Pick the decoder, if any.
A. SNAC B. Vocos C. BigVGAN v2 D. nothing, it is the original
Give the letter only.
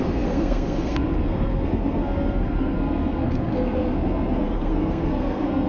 A